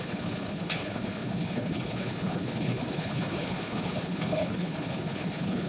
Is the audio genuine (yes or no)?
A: no